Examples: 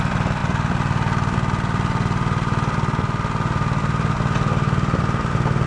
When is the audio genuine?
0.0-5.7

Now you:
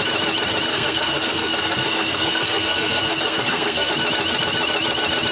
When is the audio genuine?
0.0-0.7; 3.9-5.3

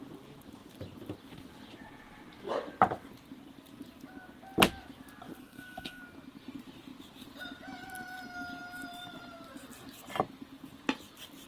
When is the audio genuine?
0.0-5.4; 6.0-11.5

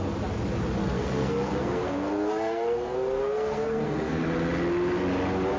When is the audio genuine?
0.0-0.8; 4.2-5.6

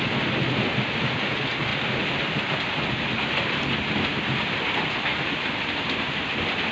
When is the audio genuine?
0.0-6.7

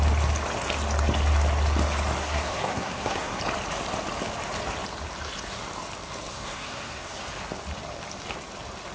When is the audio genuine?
0.0-2.2; 3.4-6.3; 7.2-8.9

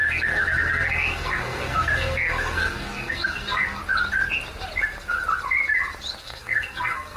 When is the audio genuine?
3.8-6.2